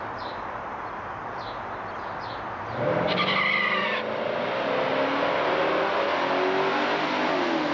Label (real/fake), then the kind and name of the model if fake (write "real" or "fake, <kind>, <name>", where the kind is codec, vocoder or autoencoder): real